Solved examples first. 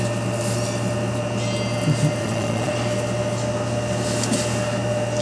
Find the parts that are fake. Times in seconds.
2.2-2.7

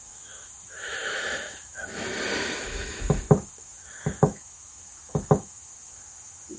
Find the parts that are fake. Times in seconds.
0.0-2.1; 2.6-6.6

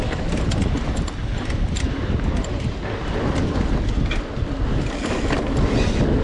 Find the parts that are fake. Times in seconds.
none

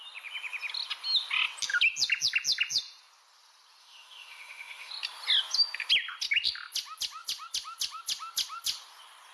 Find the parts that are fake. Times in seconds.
3.8-4.9

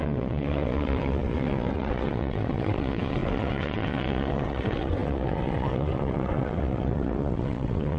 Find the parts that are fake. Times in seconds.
0.0-8.0

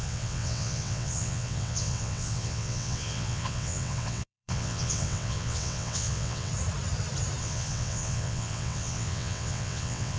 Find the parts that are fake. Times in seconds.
0.0-6.5; 7.4-10.2